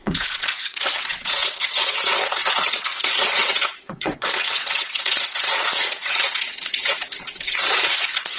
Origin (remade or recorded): remade